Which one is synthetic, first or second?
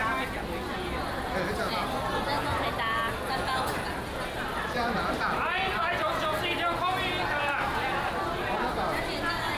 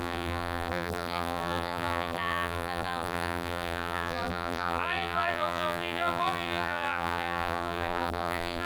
second